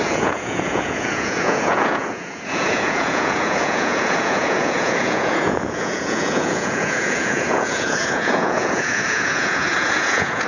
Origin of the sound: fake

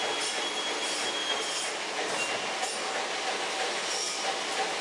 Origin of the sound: real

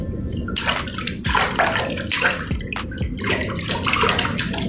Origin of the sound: real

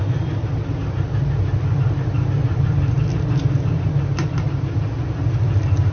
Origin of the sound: real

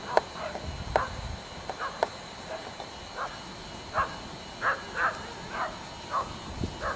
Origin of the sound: real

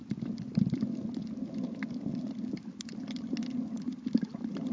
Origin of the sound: real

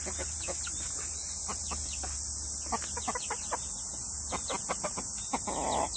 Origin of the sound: real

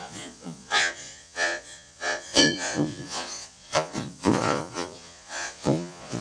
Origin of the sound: fake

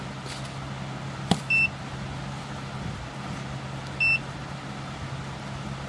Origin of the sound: real